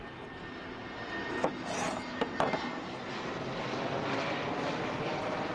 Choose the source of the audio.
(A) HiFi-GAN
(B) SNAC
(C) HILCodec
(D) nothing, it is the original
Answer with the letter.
D